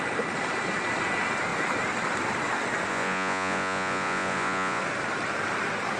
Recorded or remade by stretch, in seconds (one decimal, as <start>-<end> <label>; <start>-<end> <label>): 0.0-2.9 recorded; 2.9-4.8 remade; 4.8-6.0 recorded